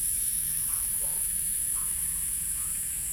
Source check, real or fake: fake